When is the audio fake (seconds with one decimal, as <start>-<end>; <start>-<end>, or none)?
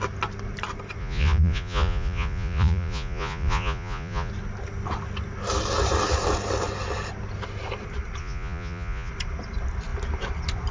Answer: 1.0-4.3; 8.2-9.1